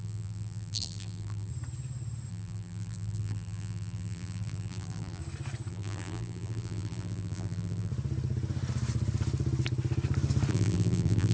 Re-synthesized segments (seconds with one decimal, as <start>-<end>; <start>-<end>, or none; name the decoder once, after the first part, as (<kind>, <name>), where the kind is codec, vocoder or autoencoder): 0.0-1.5 (vocoder, BigVGAN v2); 2.3-5.2; 5.7-7.9; 10.5-11.3